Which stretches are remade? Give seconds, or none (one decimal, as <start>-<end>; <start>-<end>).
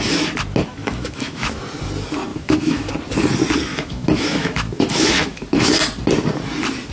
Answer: 0.8-1.6; 2.3-2.9; 3.7-5.7